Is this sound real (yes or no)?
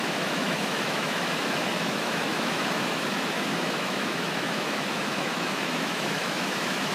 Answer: no